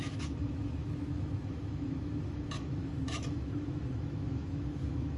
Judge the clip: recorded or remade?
remade